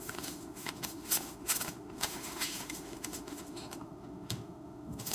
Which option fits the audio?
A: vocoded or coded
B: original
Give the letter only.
A